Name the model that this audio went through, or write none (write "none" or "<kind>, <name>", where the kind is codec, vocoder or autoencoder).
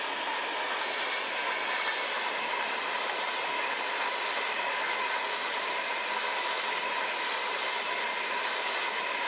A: none